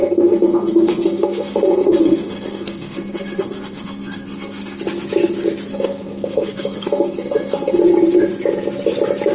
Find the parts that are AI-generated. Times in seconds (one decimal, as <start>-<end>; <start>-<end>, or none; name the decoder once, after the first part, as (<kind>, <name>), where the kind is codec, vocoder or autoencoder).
0.0-4.8 (codec, SNAC); 5.7-7.8